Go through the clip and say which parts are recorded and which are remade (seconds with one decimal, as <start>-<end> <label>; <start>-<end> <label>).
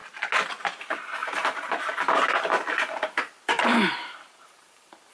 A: 0.0-0.6 recorded; 0.6-5.1 remade